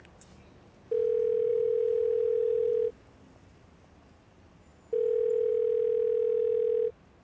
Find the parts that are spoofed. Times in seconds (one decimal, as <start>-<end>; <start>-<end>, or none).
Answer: 1.5-2.7